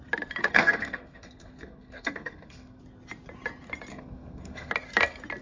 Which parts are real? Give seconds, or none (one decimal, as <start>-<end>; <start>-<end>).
0.0-0.4; 2.8-3.9; 4.7-5.4